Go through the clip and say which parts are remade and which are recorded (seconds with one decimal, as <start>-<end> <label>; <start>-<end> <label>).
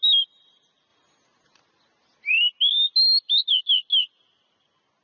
0.0-5.0 recorded